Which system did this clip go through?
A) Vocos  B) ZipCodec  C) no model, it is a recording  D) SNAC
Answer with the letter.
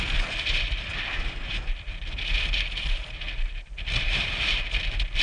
C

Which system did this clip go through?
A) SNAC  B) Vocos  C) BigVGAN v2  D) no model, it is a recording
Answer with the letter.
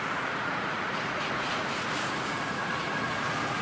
B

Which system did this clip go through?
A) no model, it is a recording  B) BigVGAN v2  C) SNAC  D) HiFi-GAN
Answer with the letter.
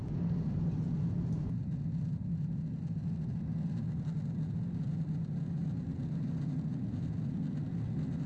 A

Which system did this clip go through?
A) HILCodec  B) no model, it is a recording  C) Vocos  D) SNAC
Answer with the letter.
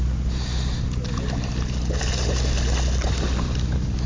B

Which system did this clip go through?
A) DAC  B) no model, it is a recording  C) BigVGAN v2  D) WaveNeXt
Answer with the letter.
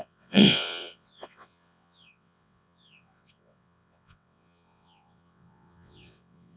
D